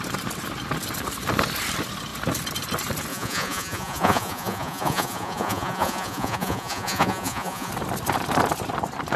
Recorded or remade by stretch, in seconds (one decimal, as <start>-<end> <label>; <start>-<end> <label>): 0.0-3.1 recorded; 3.1-7.7 remade; 7.7-9.2 recorded